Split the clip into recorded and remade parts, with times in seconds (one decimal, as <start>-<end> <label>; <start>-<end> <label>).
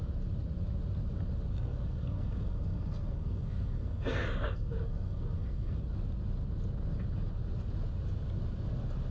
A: 0.0-1.5 recorded; 1.5-5.8 remade; 5.8-9.1 recorded